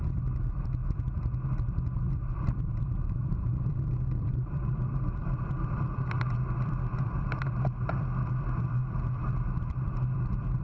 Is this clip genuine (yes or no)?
no